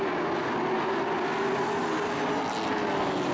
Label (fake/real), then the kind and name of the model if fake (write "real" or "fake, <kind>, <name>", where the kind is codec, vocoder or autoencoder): real